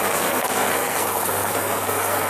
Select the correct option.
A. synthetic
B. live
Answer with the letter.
A